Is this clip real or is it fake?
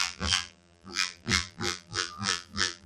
fake